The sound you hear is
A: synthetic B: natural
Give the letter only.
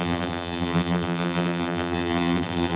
A